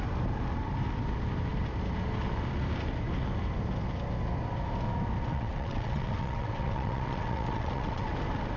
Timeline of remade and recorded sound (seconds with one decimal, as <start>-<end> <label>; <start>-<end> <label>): 0.0-5.3 recorded; 5.3-8.1 remade; 8.1-8.6 recorded